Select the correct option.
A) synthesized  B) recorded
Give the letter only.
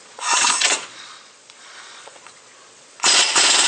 A